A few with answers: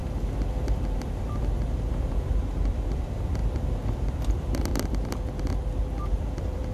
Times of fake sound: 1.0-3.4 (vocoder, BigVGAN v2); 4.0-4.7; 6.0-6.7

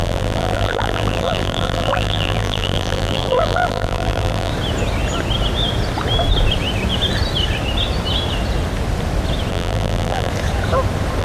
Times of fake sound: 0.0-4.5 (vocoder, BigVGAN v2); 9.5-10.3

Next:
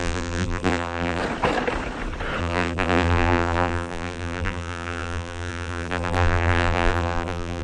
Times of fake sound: 0.0-1.2 (vocoder, BigVGAN v2); 2.4-7.6

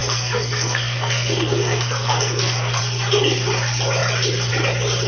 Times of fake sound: 0.0-2.8 (codec, SNAC)

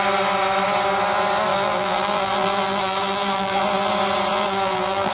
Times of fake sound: 1.5-3.9 (vocoder, BigVGAN v2); 4.3-5.1

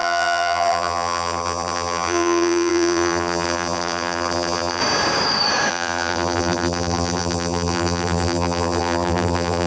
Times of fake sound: 0.0-4.8 (vocoder, BigVGAN v2); 5.7-9.7